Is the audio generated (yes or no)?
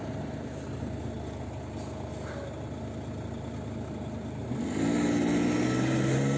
no